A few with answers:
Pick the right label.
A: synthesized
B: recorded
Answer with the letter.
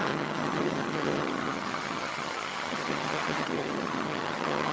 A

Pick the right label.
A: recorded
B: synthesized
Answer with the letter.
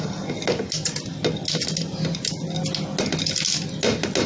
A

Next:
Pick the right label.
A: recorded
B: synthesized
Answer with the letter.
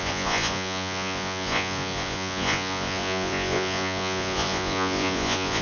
B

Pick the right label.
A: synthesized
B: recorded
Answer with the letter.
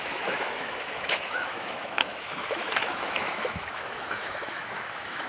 A